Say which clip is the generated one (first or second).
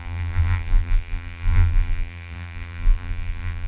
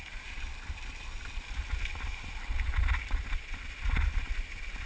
first